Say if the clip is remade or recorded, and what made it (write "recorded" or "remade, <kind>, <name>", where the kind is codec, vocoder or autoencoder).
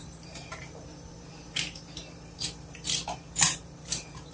remade, vocoder, BigVGAN v2